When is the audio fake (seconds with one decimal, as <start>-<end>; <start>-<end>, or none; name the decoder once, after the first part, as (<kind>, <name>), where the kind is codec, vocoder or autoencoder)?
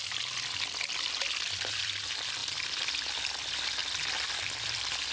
0.0-3.8 (vocoder, BigVGAN v2); 4.6-5.1